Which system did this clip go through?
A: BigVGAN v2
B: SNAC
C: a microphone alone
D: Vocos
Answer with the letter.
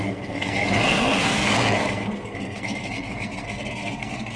B